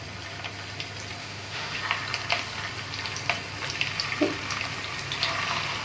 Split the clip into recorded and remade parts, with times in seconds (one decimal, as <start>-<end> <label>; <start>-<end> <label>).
0.0-1.2 recorded; 1.2-1.8 remade; 1.8-5.8 recorded